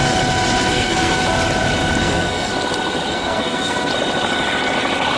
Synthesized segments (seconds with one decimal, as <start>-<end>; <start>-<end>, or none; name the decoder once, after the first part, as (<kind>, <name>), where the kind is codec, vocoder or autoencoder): 0.7-1.2 (codec, SNAC); 2.0-2.5; 3.1-3.9